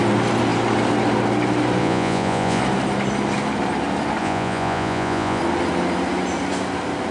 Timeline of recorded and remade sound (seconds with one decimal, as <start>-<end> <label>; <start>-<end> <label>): 0.0-1.8 recorded; 1.8-2.6 remade; 2.6-4.2 recorded; 4.2-5.4 remade; 5.4-7.1 recorded